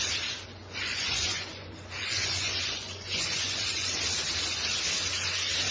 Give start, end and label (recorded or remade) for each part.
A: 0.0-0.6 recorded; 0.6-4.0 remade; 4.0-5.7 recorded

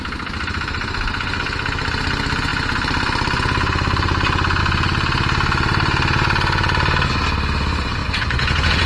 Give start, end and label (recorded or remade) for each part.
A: 0.0-8.0 recorded; 8.0-8.9 remade